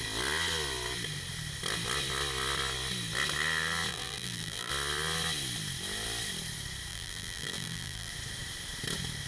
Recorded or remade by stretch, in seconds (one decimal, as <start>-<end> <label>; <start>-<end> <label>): 0.0-3.9 recorded; 3.9-4.7 remade; 4.7-6.9 recorded; 6.9-8.1 remade; 8.1-9.3 recorded